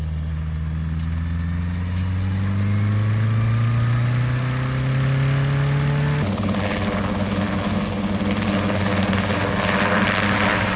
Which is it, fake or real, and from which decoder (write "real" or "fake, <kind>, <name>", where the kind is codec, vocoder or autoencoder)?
real